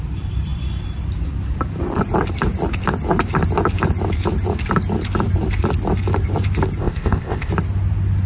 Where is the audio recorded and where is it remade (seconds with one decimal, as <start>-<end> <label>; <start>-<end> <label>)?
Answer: 0.0-6.8 recorded; 6.8-7.5 remade; 7.5-8.3 recorded